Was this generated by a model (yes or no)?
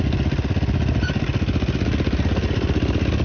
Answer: no